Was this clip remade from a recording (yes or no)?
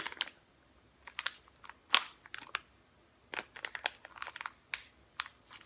no